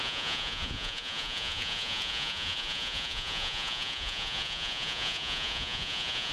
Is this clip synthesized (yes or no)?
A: yes